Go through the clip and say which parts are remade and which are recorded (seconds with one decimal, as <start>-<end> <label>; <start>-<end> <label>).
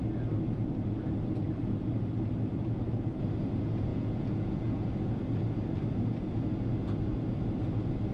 0.0-3.9 recorded; 3.9-4.9 remade; 4.9-8.1 recorded